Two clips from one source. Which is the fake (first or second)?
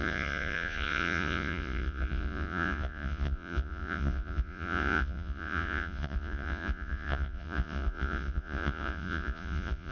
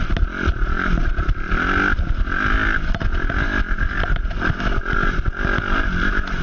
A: first